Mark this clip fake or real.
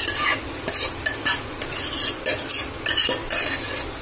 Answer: real